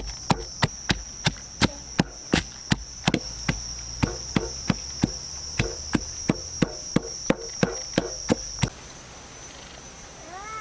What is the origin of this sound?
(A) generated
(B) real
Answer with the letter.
B